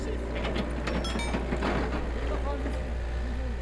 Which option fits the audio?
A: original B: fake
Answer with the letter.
A